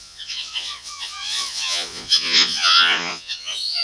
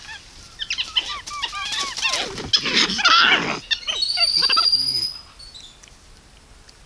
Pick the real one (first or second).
second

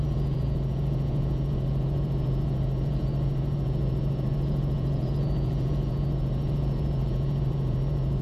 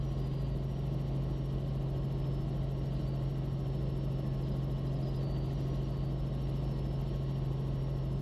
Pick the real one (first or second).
second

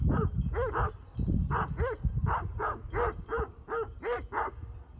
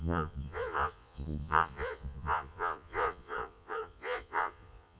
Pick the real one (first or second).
first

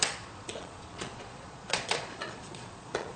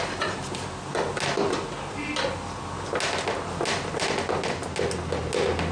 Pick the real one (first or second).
second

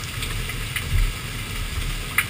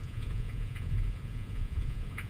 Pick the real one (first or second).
first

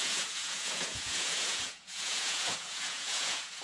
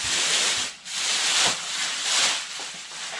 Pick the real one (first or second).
second